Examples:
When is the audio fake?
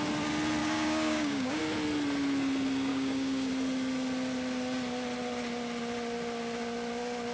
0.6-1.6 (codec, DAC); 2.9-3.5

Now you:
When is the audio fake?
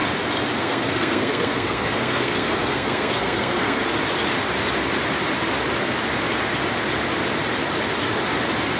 0.6-3.8 (codec, SNAC)